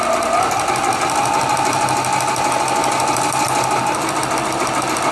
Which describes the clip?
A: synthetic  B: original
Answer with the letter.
B